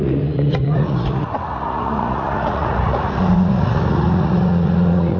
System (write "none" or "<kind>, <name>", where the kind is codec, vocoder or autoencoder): vocoder, Vocos